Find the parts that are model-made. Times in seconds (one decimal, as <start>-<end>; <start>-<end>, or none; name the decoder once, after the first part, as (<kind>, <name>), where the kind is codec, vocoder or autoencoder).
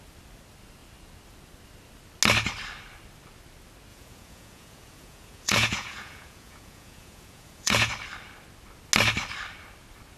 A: 3.9-7.9 (vocoder, Vocos)